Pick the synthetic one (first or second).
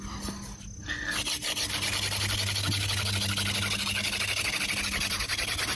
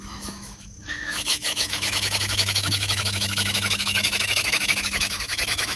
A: second